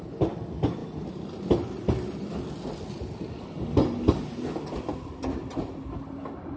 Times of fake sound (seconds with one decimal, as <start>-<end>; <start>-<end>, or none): none